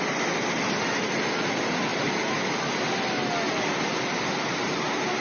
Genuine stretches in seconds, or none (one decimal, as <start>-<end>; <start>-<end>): 0.0-5.2